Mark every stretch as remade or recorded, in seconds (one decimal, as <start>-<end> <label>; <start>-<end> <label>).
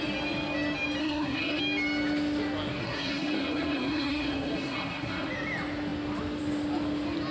0.0-1.0 recorded; 1.0-1.6 remade; 1.6-2.8 recorded; 2.8-5.3 remade; 5.3-7.3 recorded